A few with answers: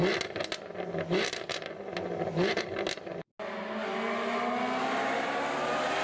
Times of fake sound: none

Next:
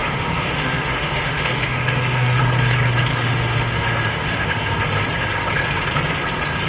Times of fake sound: 0.0-2.4; 3.1-4.8